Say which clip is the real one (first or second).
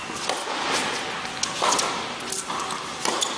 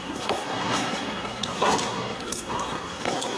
first